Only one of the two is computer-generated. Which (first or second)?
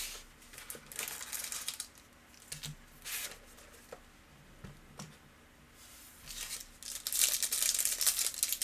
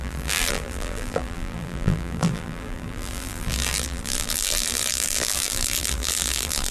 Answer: second